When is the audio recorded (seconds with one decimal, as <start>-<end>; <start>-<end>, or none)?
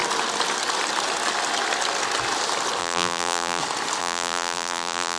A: 0.0-2.8; 3.6-4.0